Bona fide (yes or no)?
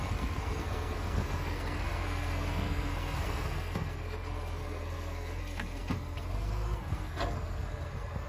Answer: no